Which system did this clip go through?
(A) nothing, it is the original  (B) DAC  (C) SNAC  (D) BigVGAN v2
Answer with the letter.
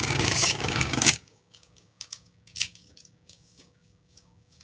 B